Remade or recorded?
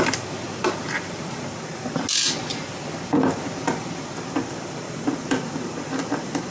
recorded